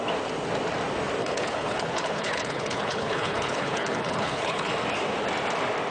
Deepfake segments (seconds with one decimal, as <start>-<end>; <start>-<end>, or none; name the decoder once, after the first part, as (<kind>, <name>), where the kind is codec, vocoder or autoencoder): 1.2-4.7 (codec, HILCodec)